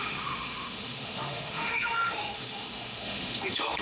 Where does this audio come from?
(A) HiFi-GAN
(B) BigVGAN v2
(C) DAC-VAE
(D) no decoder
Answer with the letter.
C